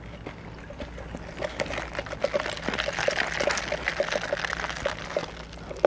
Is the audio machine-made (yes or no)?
no